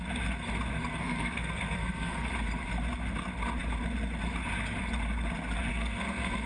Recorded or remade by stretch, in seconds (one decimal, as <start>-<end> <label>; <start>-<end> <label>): 0.0-0.9 recorded; 0.9-2.3 remade; 2.3-5.7 recorded; 5.7-6.5 remade